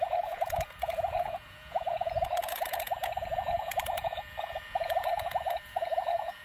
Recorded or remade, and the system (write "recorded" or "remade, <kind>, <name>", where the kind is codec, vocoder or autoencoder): remade, vocoder, Vocos